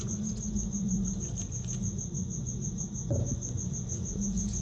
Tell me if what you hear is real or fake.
fake